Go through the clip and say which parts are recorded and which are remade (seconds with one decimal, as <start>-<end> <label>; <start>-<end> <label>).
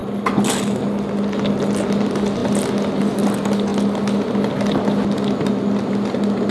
0.0-6.5 recorded